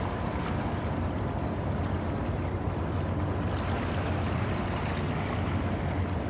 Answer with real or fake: real